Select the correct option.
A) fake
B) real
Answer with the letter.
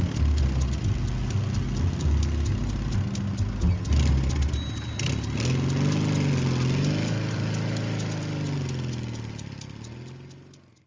B